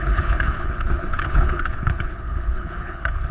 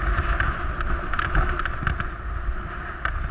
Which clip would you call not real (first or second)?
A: first